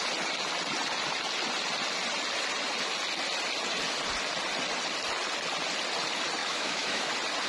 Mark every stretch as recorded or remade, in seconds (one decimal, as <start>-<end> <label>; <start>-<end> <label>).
0.0-6.4 recorded; 6.4-7.1 remade; 7.1-7.5 recorded

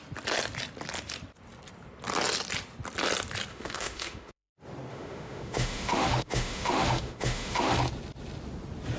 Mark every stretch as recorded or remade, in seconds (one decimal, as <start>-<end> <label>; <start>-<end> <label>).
0.0-3.5 recorded; 3.5-4.5 remade; 4.5-4.9 recorded; 4.9-7.7 remade; 7.7-9.0 recorded

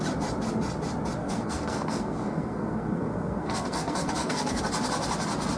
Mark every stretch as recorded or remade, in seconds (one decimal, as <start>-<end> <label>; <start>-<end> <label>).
0.0-1.2 recorded; 1.2-4.6 remade; 4.6-5.6 recorded

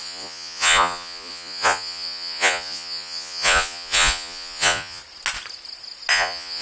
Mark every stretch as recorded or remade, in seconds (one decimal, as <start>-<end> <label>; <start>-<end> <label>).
0.0-5.0 remade; 5.0-6.1 recorded; 6.1-6.6 remade

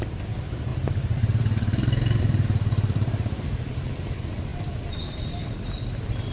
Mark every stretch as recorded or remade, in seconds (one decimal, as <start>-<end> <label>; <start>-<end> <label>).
0.0-0.7 recorded; 0.7-3.7 remade; 3.7-4.5 recorded; 4.5-6.3 remade

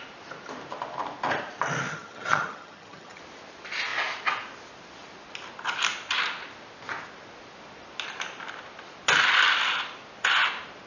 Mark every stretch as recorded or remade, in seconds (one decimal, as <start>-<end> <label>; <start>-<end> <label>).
0.0-1.9 recorded; 1.9-3.2 remade; 3.2-10.9 recorded

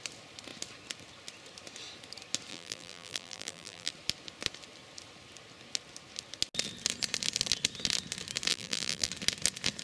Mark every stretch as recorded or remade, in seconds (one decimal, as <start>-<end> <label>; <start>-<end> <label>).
0.0-2.5 recorded; 2.5-3.9 remade; 3.9-8.5 recorded; 8.5-9.1 remade; 9.1-9.8 recorded